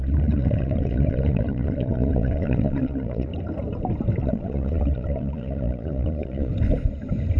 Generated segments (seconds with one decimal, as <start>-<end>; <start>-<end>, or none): 0.0-3.3; 4.2-6.5